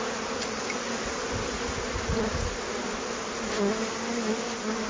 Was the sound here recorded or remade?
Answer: recorded